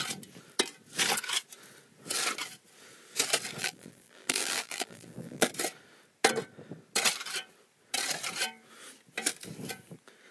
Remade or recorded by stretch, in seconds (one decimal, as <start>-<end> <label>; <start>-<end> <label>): 0.0-3.6 recorded; 3.6-5.5 remade; 5.5-10.3 recorded